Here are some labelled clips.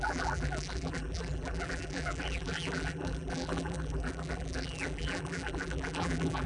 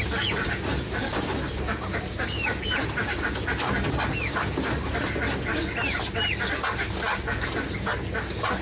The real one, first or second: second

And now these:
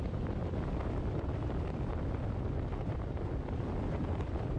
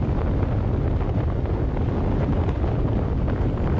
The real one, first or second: second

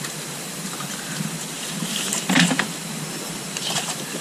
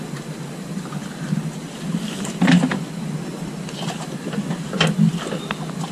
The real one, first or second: second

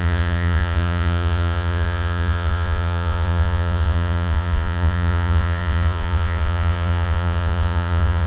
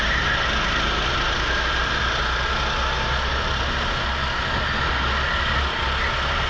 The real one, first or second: second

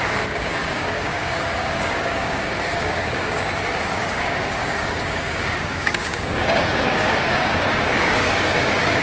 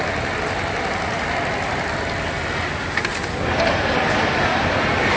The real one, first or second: second